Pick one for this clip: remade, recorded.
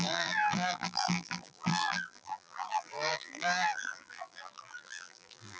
remade